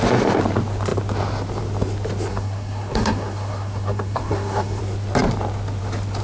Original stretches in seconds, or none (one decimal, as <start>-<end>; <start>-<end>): 0.0-2.3; 4.8-6.2